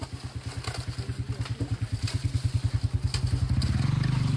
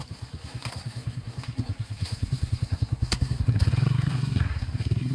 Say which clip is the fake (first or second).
second